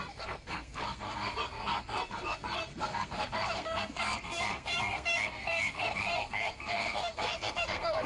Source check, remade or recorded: remade